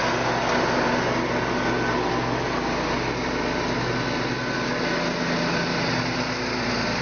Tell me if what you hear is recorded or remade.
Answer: recorded